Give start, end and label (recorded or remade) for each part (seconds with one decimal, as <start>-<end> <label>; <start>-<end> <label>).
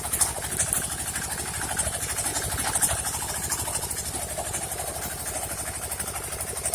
0.0-2.3 recorded; 2.3-3.3 remade; 3.3-4.7 recorded; 4.7-5.4 remade; 5.4-6.7 recorded